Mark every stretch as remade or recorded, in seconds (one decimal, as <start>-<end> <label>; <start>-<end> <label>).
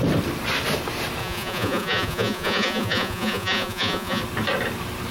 0.0-1.2 recorded; 1.2-4.2 remade; 4.2-5.1 recorded